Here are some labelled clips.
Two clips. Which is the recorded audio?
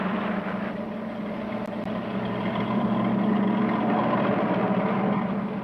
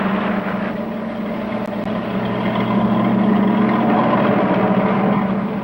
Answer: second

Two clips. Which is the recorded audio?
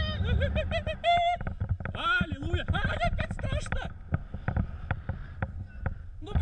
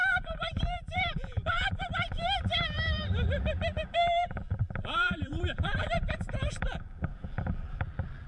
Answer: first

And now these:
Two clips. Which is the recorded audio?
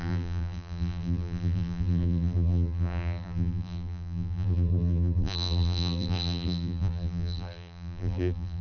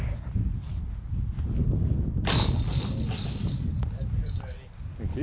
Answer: second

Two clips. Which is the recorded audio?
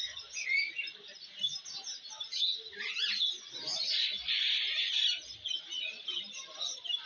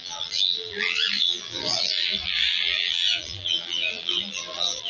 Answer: first